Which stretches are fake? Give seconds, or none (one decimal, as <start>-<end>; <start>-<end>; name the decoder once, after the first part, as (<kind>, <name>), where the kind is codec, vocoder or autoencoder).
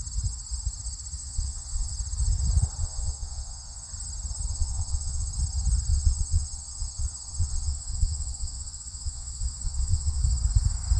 1.2-1.9 (vocoder, Vocos); 2.8-3.9; 4.5-5.3; 5.9-10.2